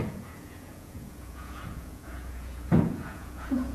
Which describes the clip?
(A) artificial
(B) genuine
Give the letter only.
A